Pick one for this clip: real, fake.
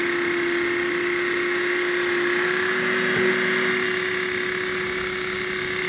real